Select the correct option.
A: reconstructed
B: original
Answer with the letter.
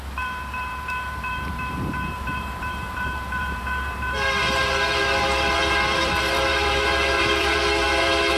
A